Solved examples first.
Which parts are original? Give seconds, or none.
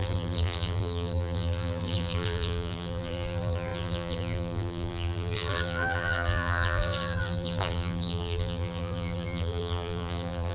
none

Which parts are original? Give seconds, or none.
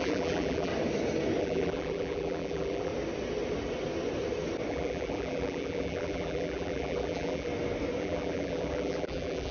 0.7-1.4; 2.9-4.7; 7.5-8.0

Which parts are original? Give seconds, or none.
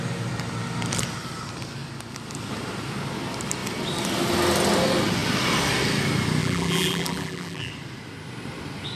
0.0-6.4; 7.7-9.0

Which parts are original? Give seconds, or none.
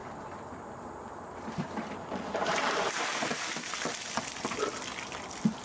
3.4-5.6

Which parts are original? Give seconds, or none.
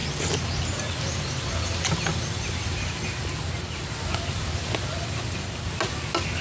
0.0-6.4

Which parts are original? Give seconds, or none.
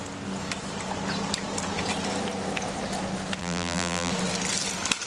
0.0-3.4; 4.1-5.1